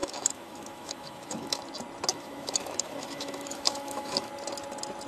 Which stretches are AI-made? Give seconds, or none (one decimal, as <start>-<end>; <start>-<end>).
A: 0.0-1.6; 2.1-4.3